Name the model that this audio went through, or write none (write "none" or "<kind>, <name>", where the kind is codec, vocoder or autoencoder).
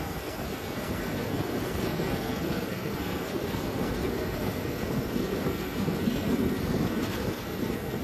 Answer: codec, SNAC